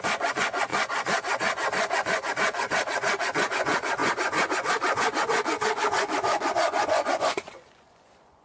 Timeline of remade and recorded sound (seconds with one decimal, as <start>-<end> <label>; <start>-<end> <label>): 0.0-2.7 remade; 2.7-3.2 recorded; 3.2-8.4 remade